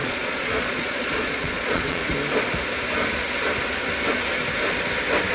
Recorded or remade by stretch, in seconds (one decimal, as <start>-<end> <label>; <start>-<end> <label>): 0.0-2.0 remade; 2.0-5.3 recorded